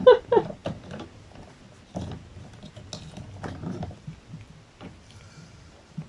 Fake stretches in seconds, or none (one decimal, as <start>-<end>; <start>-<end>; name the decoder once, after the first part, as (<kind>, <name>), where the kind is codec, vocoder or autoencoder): 0.0-0.6 (vocoder, BigVGAN v2); 3.3-6.1

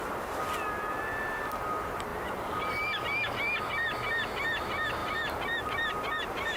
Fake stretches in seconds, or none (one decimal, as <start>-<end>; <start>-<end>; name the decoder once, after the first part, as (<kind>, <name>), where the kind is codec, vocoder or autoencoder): none

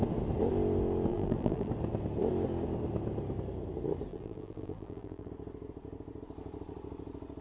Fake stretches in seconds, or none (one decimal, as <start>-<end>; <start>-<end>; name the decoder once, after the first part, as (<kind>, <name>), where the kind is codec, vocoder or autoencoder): 1.1-1.7 (vocoder, BigVGAN v2); 4.1-5.3

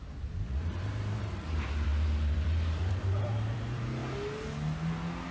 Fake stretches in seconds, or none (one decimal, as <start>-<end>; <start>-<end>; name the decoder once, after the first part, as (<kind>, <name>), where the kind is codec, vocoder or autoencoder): 0.0-4.0 (vocoder, BigVGAN v2)

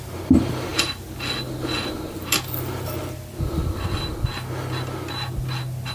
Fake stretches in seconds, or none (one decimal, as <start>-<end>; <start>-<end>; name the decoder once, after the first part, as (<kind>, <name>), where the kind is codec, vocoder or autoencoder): none